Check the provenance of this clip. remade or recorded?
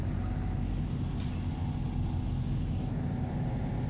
recorded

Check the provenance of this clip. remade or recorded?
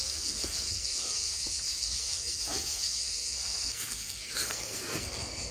remade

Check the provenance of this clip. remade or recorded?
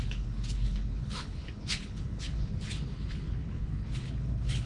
remade